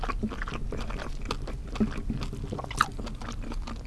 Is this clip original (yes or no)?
yes